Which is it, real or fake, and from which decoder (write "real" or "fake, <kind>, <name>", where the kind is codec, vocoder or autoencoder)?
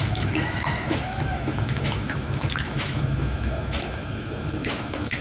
fake, autoencoder, DAC-VAE